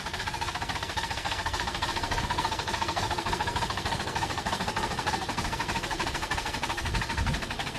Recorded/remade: remade